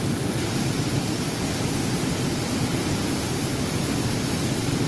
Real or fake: real